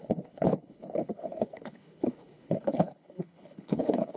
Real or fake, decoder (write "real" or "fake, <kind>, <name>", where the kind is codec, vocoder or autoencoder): fake, codec, HILCodec